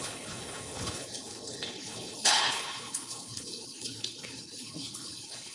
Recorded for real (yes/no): no